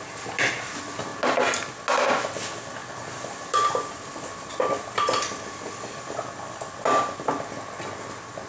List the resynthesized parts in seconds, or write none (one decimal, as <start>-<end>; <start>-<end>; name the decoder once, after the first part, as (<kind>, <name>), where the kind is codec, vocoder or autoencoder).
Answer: 2.8-4.5 (vocoder, BigVGAN v2)

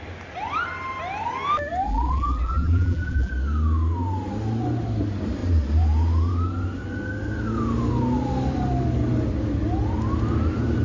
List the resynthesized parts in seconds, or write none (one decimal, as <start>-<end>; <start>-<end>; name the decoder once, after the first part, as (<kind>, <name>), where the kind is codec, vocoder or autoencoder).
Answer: 1.9-3.3 (vocoder, BigVGAN v2)

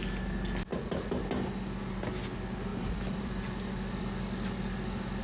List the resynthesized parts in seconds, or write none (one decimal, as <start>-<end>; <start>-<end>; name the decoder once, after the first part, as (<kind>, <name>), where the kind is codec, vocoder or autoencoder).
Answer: 2.7-4.1 (vocoder, BigVGAN v2)

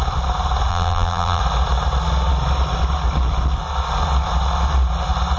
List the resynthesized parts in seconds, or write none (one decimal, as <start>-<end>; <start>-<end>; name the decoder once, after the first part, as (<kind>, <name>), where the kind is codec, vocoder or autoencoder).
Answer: 0.7-1.4 (vocoder, BigVGAN v2)